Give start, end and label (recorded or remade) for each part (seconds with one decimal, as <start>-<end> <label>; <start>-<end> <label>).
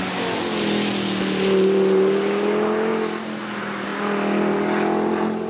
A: 0.0-5.5 recorded